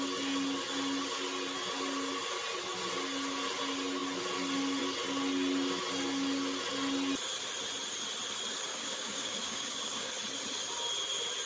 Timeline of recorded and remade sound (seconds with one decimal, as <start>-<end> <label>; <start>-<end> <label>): 0.0-8.7 recorded; 8.7-10.1 remade; 10.1-11.5 recorded

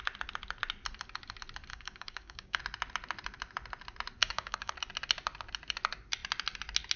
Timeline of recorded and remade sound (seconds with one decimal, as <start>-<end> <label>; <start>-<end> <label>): 0.0-1.7 recorded; 1.7-2.6 remade; 2.6-4.2 recorded; 4.2-4.7 remade; 4.7-7.0 recorded

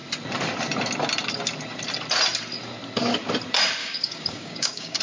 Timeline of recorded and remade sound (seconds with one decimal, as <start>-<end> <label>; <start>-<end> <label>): 0.0-3.8 recorded; 3.8-5.0 remade

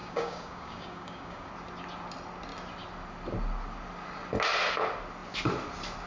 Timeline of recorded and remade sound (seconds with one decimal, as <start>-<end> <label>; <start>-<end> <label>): 0.0-1.5 remade; 1.5-6.1 recorded

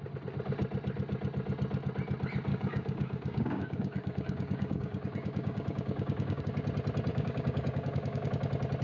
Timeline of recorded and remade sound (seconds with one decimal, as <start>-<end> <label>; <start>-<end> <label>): 0.0-2.5 recorded; 2.5-6.4 remade; 6.4-7.1 recorded; 7.1-8.3 remade; 8.3-8.8 recorded